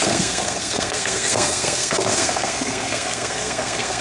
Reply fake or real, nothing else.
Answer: fake